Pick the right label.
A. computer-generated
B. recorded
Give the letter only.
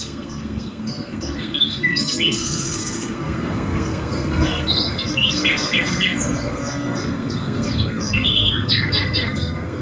A